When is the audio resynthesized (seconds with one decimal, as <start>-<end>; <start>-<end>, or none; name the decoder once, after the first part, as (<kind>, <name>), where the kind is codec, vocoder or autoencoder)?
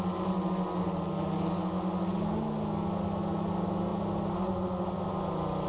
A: none